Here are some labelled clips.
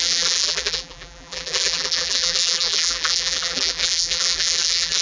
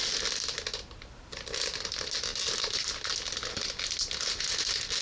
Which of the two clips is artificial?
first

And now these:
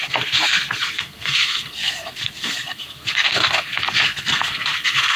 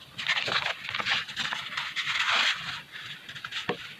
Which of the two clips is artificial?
first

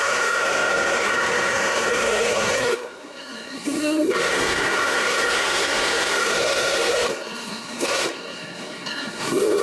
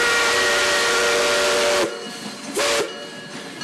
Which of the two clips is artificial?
first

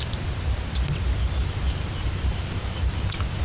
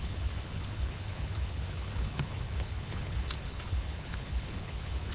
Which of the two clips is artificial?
second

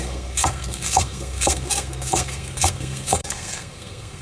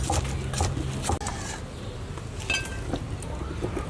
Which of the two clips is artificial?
first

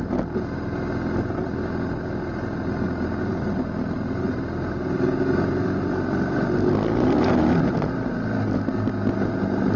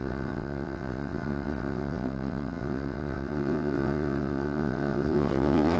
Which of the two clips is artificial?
second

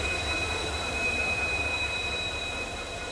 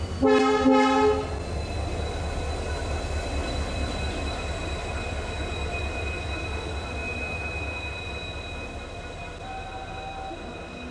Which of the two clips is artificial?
first